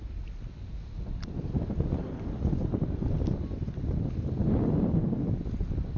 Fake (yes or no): no